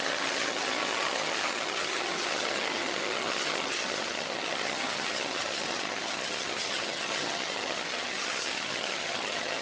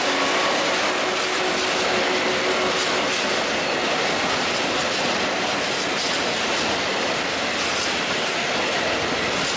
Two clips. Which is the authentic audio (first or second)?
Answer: second